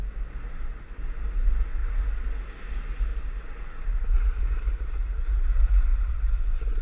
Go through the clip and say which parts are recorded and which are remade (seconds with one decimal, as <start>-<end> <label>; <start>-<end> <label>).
0.0-6.8 recorded